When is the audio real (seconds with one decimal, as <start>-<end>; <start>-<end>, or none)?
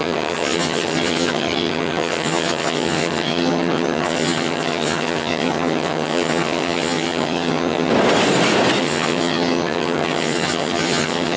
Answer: 7.9-8.8